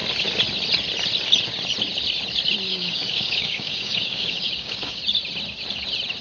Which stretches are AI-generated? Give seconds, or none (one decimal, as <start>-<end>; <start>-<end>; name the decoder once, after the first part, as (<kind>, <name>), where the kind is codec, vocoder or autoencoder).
2.7-5.0 (codec, DAC)